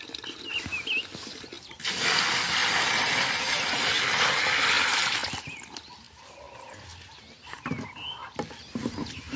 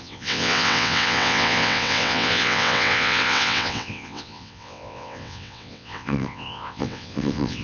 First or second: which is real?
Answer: first